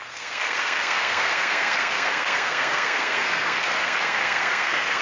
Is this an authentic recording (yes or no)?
no